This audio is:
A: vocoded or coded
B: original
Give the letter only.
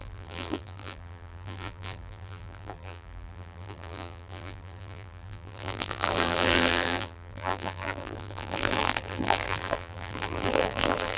A